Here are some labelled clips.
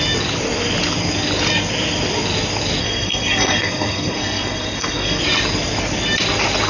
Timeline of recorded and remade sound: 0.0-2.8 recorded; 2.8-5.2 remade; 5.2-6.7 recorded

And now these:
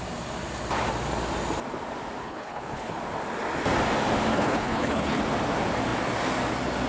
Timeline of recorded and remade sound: 0.0-2.2 recorded; 2.2-3.0 remade; 3.0-4.3 recorded; 4.3-5.2 remade; 5.2-6.9 recorded

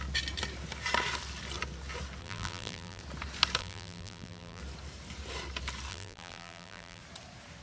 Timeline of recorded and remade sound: 0.0-2.2 recorded; 2.2-3.0 remade; 3.0-3.6 recorded; 3.6-4.6 remade; 4.6-5.9 recorded; 5.9-7.0 remade; 7.0-7.6 recorded

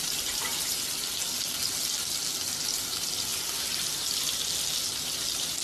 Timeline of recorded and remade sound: 0.0-1.6 remade; 1.6-2.9 recorded; 2.9-3.3 remade; 3.3-5.6 recorded

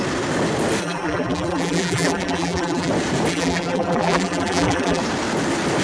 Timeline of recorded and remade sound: 0.0-0.8 recorded; 0.8-2.9 remade; 2.9-3.3 recorded; 3.3-5.0 remade; 5.0-5.8 recorded

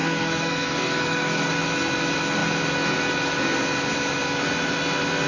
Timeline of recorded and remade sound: 0.0-1.5 remade; 1.5-5.3 recorded

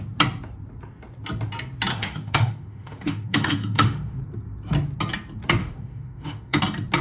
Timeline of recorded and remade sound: 0.0-1.9 recorded; 1.9-4.2 remade; 4.2-5.6 recorded; 5.6-6.6 remade; 6.6-7.0 recorded